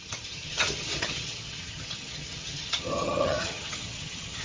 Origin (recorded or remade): remade